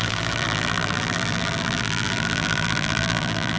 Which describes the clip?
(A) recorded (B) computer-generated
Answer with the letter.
B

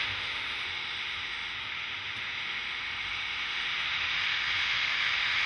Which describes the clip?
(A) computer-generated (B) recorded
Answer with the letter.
A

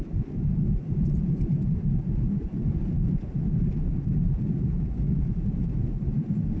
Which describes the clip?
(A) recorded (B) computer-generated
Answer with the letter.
A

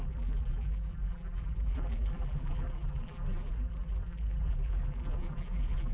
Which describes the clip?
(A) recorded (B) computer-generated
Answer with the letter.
B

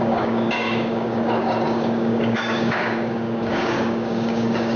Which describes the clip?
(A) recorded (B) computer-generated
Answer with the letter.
B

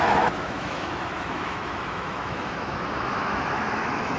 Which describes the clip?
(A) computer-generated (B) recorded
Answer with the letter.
A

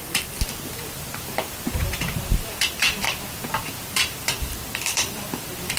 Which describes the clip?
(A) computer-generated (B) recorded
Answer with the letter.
A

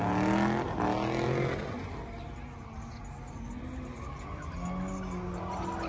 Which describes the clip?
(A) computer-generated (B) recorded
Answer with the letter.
B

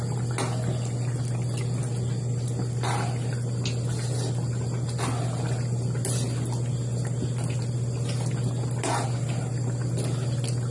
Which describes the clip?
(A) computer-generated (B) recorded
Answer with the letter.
B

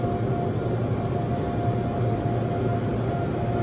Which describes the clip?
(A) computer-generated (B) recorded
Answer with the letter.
B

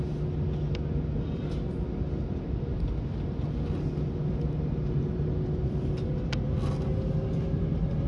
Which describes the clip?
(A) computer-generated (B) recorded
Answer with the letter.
B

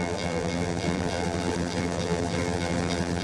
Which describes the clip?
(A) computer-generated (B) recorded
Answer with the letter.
A